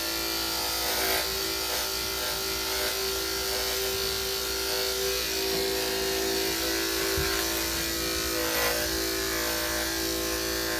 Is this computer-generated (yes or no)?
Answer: no